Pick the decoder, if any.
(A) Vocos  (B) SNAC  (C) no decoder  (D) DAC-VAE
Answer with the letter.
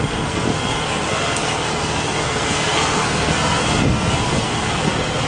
B